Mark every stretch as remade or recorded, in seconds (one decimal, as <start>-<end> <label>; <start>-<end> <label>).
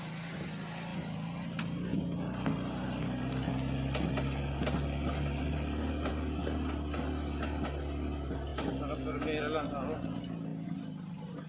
0.0-11.5 recorded